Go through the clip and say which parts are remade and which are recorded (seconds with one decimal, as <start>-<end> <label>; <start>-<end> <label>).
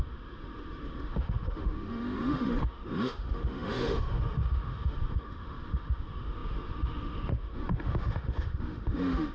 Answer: 0.0-9.3 remade